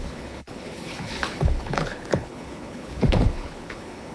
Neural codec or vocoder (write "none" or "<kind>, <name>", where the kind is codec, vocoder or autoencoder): codec, HILCodec